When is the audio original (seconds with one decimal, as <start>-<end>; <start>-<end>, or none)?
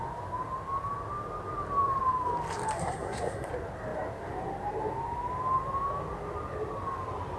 0.0-2.8; 3.5-7.4